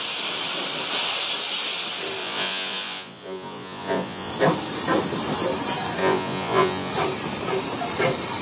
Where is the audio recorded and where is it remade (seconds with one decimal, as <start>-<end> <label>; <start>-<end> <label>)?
0.0-2.2 recorded; 2.2-4.3 remade; 4.3-6.0 recorded; 6.0-6.9 remade; 6.9-8.4 recorded